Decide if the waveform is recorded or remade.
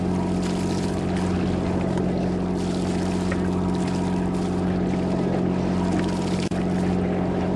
recorded